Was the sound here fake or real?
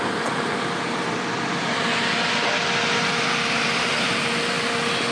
real